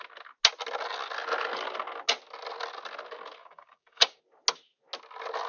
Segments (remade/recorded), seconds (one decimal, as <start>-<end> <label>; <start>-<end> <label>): 0.0-3.4 recorded; 3.4-4.2 remade; 4.2-5.5 recorded